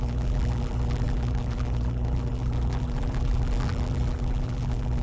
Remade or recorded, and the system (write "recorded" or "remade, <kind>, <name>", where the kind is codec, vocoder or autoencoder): remade, vocoder, BigVGAN v2